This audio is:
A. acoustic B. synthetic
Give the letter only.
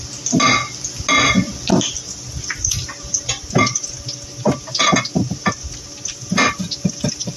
A